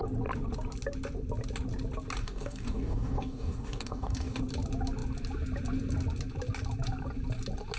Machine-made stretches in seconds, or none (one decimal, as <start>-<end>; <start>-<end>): 2.2-4.4